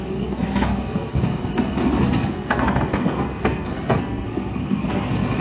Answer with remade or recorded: remade